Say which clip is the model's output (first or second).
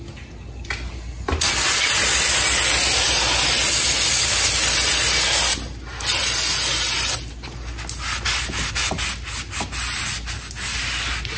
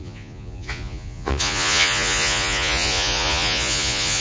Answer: second